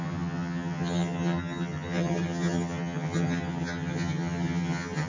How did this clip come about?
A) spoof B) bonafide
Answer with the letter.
A